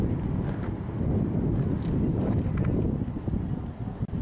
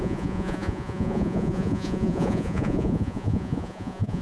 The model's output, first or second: second